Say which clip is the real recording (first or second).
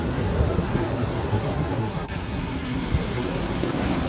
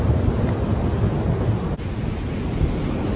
second